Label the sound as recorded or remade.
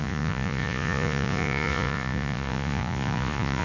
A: remade